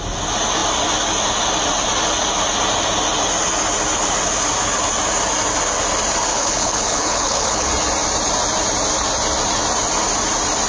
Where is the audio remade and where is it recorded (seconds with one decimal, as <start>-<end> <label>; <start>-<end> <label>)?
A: 0.0-6.3 recorded; 6.3-7.7 remade; 7.7-10.7 recorded